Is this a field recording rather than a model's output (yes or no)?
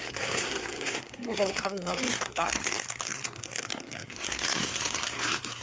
no